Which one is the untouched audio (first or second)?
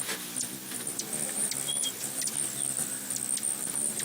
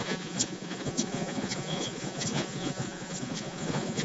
first